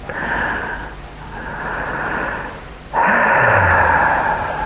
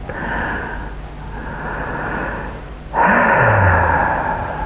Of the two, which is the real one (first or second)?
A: second